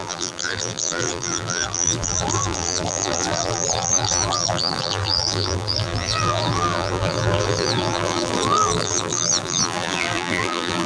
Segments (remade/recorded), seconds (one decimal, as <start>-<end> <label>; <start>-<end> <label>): 0.0-10.9 remade